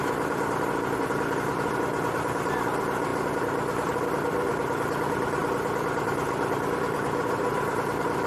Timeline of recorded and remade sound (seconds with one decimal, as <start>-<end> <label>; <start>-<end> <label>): 0.0-5.4 remade; 5.4-6.2 recorded; 6.2-8.3 remade